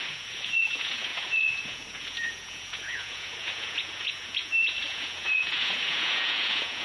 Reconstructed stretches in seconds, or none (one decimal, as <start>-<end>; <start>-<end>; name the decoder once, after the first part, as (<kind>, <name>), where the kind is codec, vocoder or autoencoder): 0.0-6.8 (vocoder, Vocos)